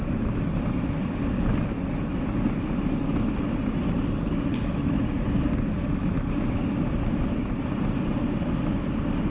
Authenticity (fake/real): real